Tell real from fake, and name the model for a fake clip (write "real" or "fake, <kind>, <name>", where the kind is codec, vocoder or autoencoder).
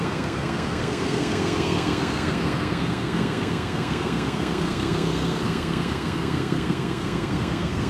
fake, codec, SNAC